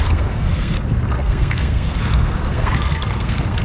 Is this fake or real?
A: fake